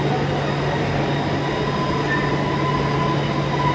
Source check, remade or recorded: recorded